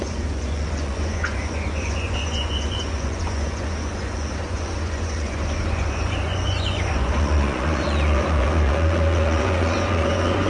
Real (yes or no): no